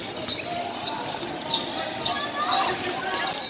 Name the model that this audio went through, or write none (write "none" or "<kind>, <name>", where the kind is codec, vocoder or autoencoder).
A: none